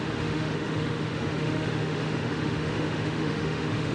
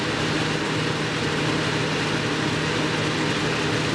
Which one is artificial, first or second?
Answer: first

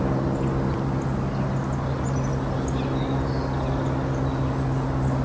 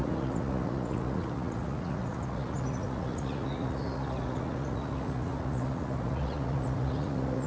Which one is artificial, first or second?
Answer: second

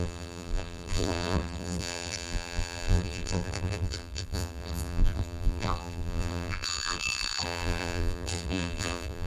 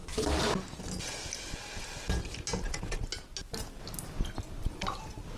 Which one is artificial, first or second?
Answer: first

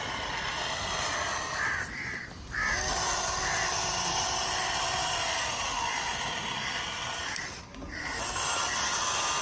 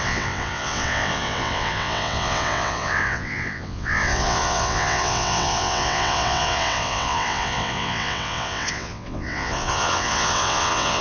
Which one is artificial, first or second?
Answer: second